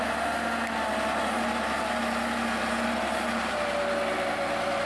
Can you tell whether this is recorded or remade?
recorded